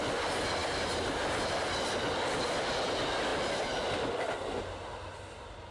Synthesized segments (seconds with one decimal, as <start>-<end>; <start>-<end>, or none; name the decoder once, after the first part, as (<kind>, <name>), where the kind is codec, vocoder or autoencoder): none